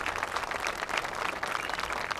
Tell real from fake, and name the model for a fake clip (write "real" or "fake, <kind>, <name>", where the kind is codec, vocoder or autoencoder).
real